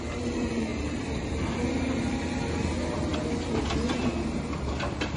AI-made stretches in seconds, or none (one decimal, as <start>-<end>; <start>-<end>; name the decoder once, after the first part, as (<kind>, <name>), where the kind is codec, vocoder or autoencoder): 0.0-5.2 (vocoder, BigVGAN v2)